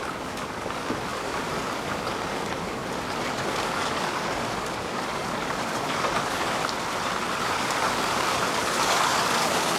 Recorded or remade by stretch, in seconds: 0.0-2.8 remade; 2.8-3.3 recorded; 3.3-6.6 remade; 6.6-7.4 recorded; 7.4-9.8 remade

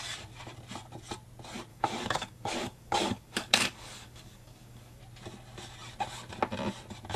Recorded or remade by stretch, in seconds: 0.0-1.7 recorded; 1.7-5.0 remade; 5.0-7.2 recorded